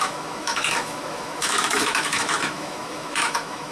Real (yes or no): no